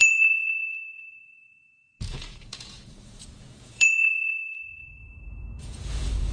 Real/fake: fake